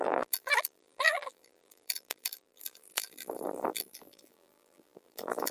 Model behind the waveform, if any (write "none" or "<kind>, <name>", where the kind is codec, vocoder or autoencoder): vocoder, BigVGAN v2